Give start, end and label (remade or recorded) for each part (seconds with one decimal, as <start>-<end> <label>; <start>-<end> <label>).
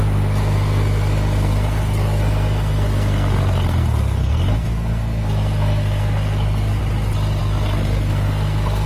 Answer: 0.0-6.8 remade; 6.8-7.4 recorded; 7.4-8.9 remade